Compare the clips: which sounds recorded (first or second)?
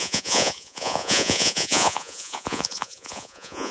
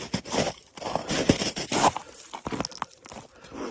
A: second